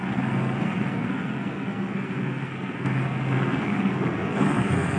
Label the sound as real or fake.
fake